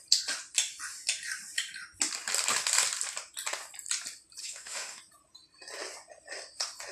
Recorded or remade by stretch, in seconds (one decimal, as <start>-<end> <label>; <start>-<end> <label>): 0.0-4.4 recorded; 4.4-5.0 remade; 5.0-6.9 recorded